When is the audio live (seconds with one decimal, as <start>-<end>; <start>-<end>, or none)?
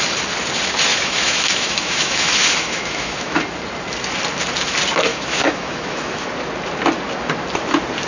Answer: 0.0-0.9; 3.4-5.1; 6.3-8.1